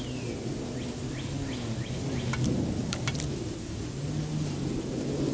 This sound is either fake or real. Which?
real